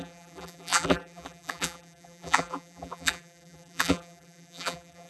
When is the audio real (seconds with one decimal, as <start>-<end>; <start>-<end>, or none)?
none